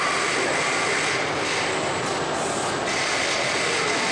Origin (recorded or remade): recorded